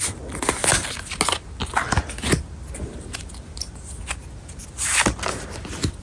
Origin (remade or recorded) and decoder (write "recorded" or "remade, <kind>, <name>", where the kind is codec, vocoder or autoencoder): recorded